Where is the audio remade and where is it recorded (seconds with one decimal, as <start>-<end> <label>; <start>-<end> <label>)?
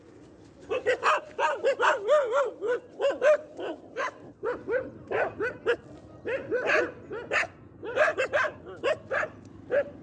0.0-10.0 recorded